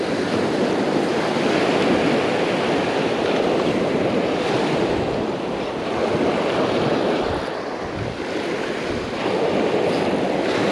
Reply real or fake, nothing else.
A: real